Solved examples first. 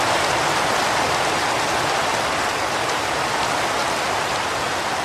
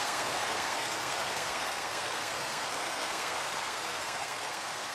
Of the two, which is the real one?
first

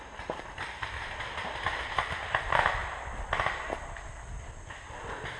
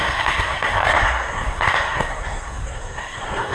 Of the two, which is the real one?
first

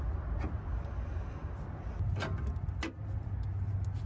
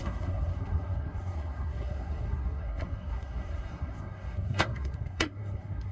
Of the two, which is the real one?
first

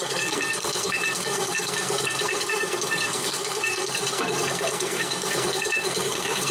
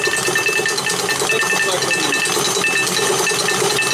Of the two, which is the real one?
second